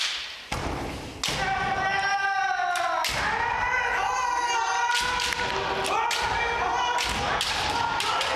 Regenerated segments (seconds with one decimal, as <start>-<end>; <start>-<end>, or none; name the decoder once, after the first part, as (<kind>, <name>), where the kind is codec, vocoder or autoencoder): none